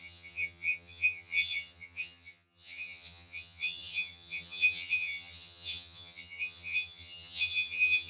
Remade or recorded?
remade